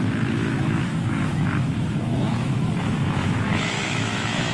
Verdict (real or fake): fake